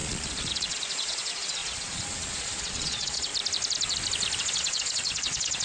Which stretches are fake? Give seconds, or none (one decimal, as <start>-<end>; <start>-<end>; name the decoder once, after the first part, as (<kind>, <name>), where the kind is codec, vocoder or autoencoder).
0.0-3.3 (vocoder, Vocos); 4.4-5.6